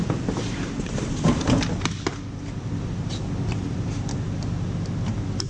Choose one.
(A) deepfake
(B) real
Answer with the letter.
B